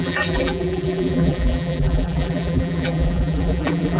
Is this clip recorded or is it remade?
remade